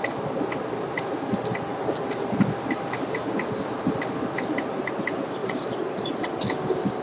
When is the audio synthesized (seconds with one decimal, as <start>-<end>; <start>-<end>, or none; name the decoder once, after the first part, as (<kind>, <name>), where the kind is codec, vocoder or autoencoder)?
5.4-6.3 (vocoder, Vocos)